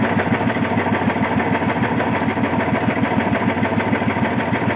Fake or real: real